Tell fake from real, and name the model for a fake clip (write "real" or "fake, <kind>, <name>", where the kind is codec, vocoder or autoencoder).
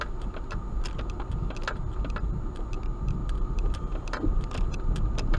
real